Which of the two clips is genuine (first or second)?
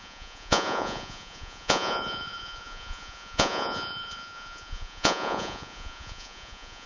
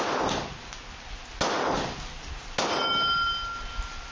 second